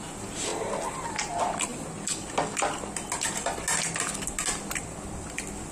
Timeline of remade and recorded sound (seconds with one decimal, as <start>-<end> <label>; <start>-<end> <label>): 0.0-5.7 recorded